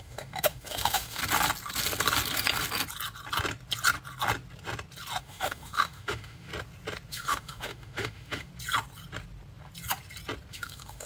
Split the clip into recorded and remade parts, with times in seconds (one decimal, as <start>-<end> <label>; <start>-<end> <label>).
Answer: 0.0-1.2 remade; 1.2-5.2 recorded; 5.2-6.5 remade; 6.5-7.1 recorded; 7.1-8.5 remade; 8.5-10.5 recorded; 10.5-11.1 remade